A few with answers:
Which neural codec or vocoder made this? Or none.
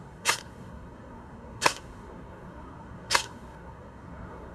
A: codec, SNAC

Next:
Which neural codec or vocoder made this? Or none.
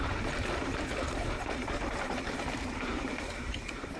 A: vocoder, BigVGAN v2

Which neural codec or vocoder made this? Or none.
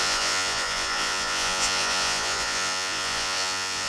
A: vocoder, Vocos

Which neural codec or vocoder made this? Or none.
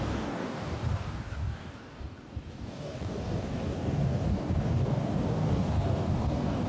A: codec, DAC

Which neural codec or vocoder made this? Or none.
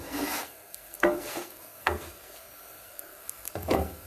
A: codec, SNAC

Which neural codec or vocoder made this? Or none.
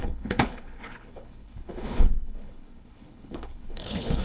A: codec, HILCodec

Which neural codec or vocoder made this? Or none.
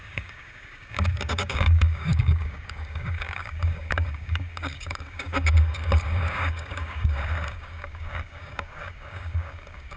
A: codec, DAC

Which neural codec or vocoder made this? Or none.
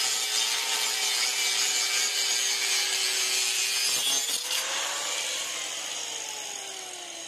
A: none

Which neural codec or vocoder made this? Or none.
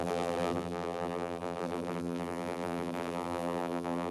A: vocoder, BigVGAN v2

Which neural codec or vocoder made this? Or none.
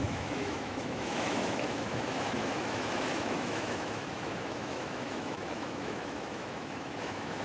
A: autoencoder, DAC-VAE